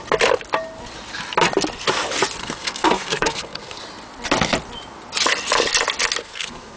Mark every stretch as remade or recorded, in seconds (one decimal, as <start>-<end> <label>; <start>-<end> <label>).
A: 0.0-2.4 recorded; 2.4-3.8 remade; 3.8-6.2 recorded; 6.2-6.8 remade